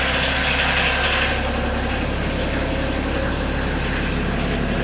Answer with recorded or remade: recorded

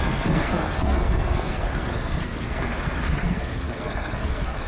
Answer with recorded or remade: remade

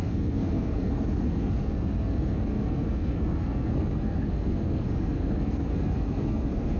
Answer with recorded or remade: remade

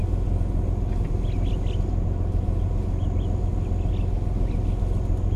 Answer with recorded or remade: recorded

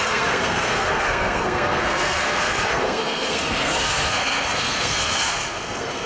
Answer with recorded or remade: remade